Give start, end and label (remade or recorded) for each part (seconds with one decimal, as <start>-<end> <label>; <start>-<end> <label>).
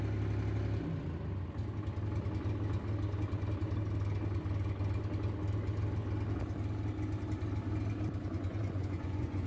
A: 0.0-8.2 recorded; 8.2-9.5 remade